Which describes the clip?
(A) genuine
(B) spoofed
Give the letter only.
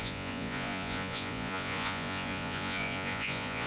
B